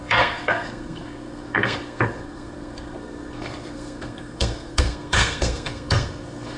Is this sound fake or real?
fake